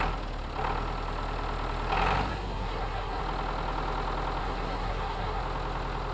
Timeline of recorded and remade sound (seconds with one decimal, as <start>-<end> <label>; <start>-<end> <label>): 0.0-2.3 recorded; 2.3-3.2 remade; 3.2-4.4 recorded; 4.4-5.4 remade; 5.4-6.1 recorded